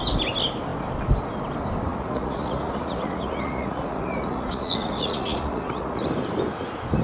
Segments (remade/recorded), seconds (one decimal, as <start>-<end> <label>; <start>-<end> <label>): 0.0-1.9 recorded; 1.9-6.1 remade; 6.1-7.0 recorded